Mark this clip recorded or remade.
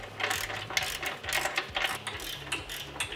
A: recorded